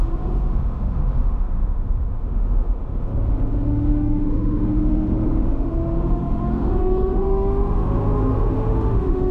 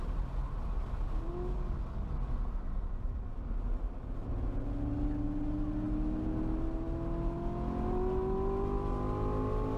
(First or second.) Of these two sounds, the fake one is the first